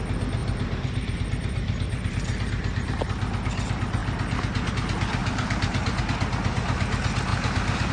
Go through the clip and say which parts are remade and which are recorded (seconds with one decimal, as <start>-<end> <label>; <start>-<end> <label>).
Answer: 0.0-0.4 recorded; 0.4-3.0 remade; 3.0-5.2 recorded; 5.2-6.0 remade; 6.0-7.3 recorded; 7.3-7.9 remade